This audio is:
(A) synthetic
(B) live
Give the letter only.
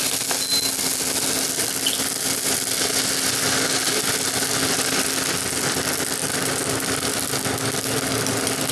B